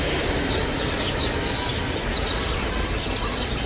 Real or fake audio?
real